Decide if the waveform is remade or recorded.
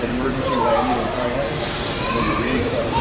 remade